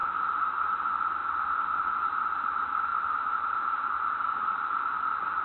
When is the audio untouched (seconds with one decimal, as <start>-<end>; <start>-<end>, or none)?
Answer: 0.6-2.9; 3.5-5.4